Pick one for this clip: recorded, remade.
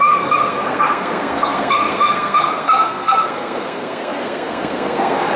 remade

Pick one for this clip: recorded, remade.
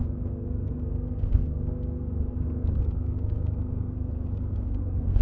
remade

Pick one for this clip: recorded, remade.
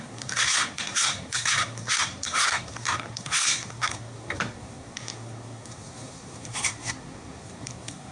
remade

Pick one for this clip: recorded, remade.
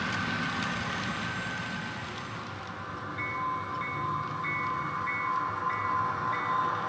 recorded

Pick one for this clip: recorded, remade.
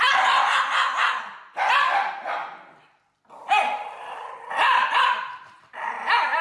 recorded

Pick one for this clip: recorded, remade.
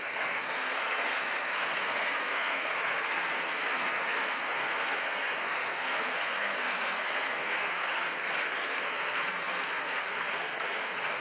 remade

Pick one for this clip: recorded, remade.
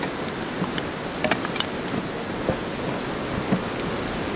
recorded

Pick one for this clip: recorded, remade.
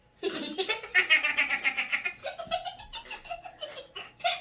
recorded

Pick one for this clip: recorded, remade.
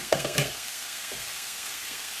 remade